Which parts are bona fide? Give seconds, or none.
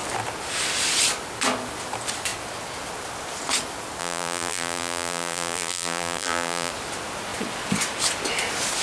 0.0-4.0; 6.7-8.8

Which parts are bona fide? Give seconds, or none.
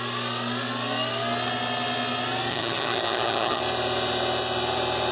0.0-2.5; 3.6-5.1